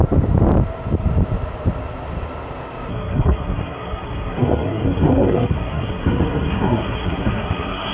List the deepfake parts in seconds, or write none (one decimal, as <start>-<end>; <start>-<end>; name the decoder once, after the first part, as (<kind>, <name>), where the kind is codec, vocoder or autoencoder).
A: 2.9-7.9 (codec, SNAC)